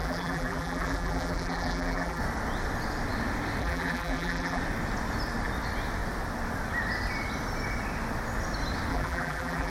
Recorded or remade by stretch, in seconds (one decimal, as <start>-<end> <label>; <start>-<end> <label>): 0.0-2.2 remade; 2.2-3.6 recorded; 3.6-4.6 remade; 4.6-8.9 recorded; 8.9-9.7 remade